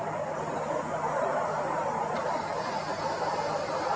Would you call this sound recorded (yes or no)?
yes